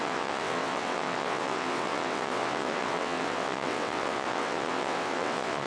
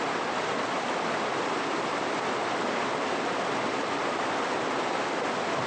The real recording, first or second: second